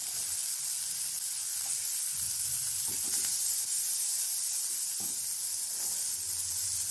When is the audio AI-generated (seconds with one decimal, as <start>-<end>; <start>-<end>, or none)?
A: none